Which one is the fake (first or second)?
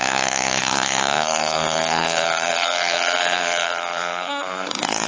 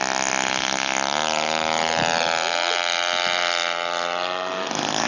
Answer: first